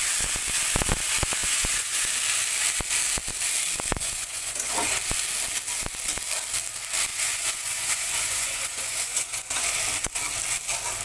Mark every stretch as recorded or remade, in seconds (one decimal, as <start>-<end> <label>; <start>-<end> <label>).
0.0-1.4 recorded; 1.4-2.0 remade; 2.0-3.9 recorded; 3.9-4.9 remade; 4.9-7.1 recorded; 7.1-9.7 remade; 9.7-11.0 recorded